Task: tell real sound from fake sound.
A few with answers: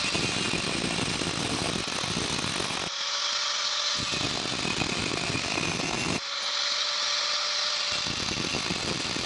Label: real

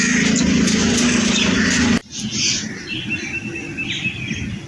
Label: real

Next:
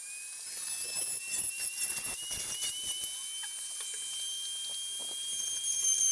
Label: real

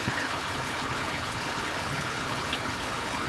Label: fake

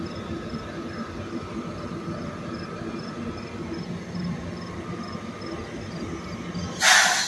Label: real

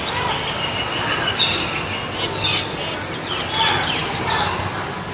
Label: real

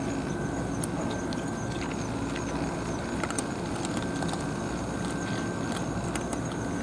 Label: real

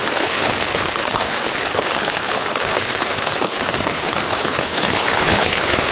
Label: fake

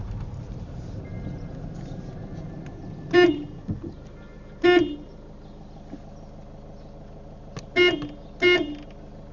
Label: real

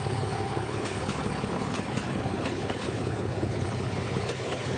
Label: fake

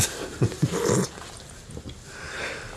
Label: real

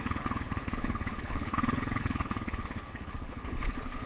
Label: fake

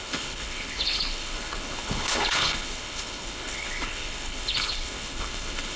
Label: fake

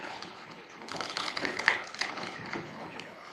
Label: fake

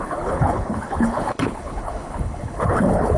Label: fake